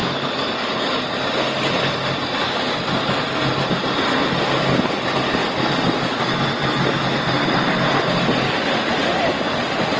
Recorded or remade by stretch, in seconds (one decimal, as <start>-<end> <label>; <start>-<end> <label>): 0.0-10.0 recorded